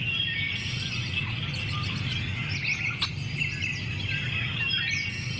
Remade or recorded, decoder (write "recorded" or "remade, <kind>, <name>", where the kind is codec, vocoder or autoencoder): recorded